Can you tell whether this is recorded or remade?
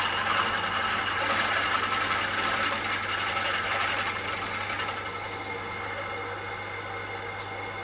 recorded